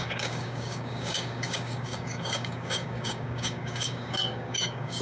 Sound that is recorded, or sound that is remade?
remade